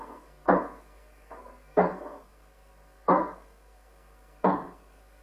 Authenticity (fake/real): fake